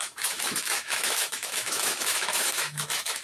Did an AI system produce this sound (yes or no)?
yes